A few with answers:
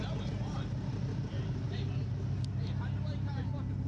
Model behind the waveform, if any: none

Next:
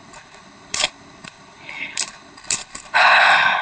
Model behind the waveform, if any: codec, HILCodec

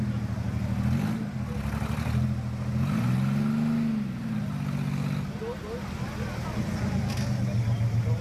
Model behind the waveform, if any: none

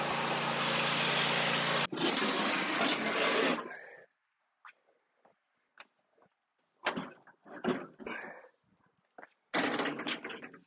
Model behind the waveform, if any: none